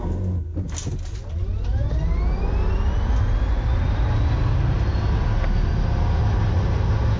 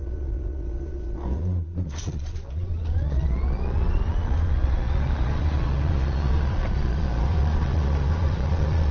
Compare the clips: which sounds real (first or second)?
first